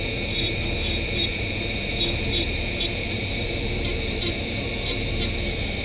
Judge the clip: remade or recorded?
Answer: remade